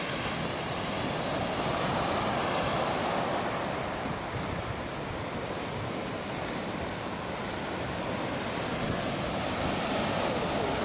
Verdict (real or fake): real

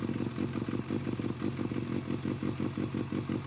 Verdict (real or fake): real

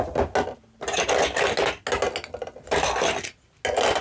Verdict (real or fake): real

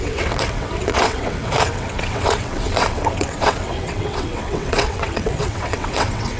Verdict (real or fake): fake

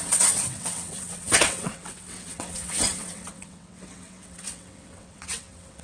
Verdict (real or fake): fake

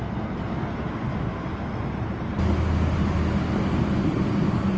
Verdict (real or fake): real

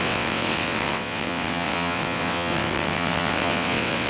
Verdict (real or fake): fake